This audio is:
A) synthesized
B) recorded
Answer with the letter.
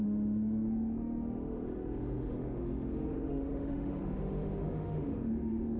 A